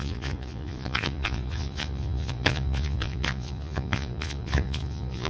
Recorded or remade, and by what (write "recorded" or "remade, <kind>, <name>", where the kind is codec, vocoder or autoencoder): remade, vocoder, Vocos